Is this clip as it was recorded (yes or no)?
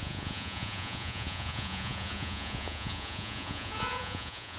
no